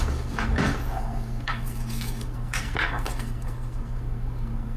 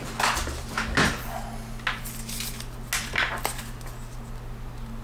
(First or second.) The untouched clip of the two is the second